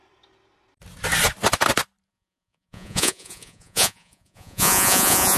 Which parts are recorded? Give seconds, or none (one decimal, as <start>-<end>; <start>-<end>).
0.0-2.1